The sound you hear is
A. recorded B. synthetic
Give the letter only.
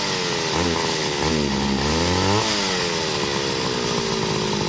A